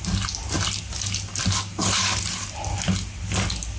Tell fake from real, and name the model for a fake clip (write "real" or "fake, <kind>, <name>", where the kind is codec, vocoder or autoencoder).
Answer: real